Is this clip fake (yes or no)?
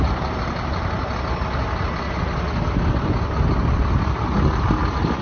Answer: no